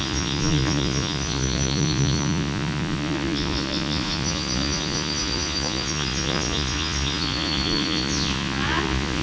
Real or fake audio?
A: fake